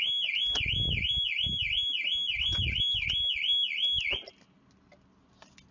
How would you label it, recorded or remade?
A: recorded